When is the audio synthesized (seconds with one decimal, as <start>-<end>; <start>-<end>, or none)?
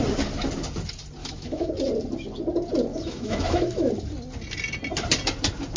1.2-1.7; 2.9-3.9